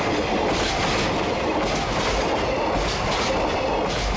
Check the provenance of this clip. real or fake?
real